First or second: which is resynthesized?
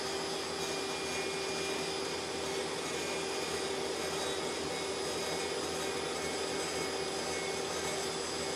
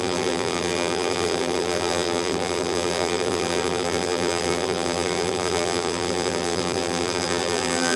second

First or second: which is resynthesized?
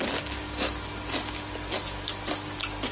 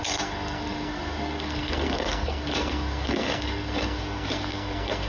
second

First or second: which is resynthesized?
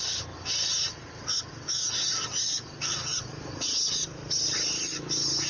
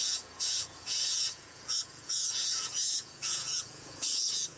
second